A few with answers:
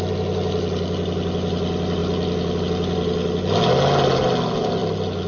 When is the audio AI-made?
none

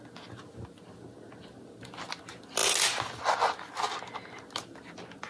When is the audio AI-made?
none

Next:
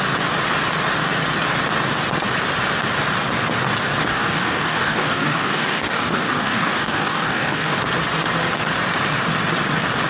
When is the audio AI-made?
4.0-7.8 (codec, DAC)

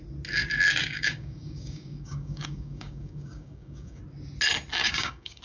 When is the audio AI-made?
0.8-4.0 (codec, DAC); 4.8-5.4